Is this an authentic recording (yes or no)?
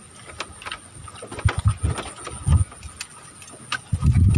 yes